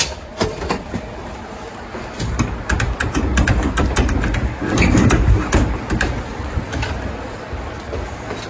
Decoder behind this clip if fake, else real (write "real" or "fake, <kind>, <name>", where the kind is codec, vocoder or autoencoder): real